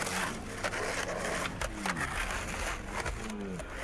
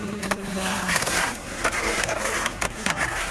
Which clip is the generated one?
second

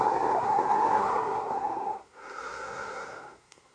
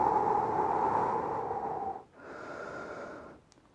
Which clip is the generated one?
first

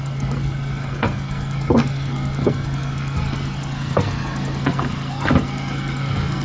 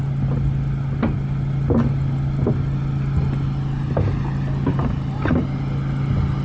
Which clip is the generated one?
first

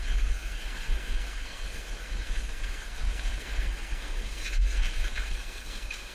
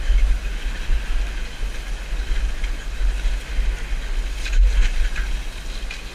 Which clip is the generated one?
first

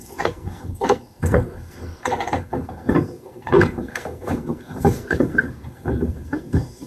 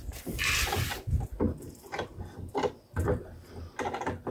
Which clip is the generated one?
first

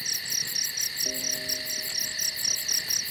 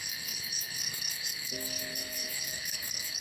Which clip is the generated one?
second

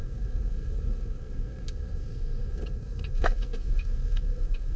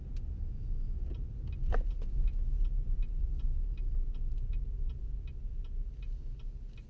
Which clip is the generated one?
first